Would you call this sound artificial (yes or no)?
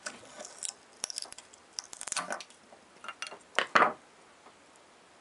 no